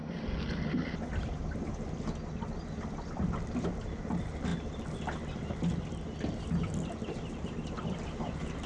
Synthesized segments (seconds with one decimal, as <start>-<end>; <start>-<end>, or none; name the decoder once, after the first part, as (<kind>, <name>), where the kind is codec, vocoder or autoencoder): none